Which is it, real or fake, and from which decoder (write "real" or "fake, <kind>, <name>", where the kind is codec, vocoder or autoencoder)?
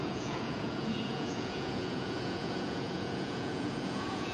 fake, vocoder, Vocos